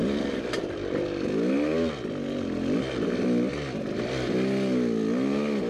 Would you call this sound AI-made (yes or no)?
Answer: no